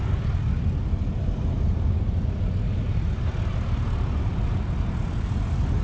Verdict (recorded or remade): recorded